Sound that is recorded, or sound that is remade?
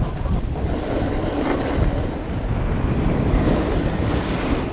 recorded